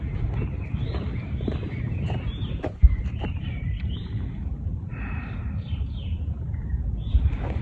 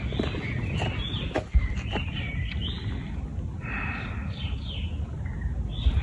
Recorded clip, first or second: second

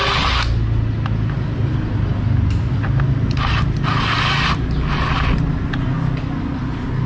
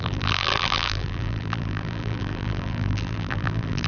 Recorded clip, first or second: first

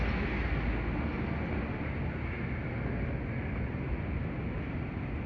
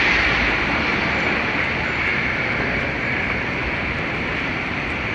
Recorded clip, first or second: first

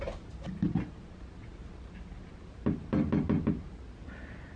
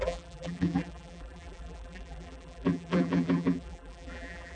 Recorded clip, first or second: first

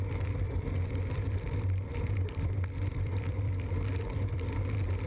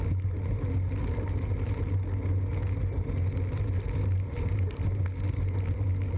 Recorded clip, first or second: second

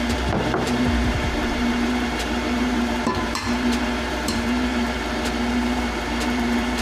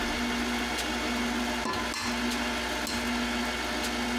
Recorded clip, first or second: second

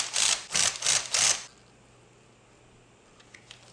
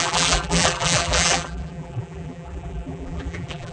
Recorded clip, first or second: first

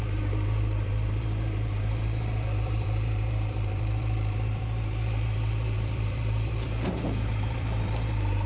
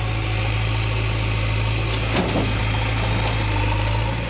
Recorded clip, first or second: second